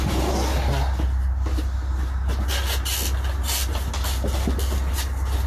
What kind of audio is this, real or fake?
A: real